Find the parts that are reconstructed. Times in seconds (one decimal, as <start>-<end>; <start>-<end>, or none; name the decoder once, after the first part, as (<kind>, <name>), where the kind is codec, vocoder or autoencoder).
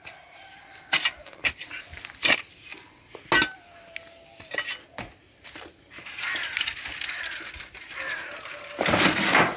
none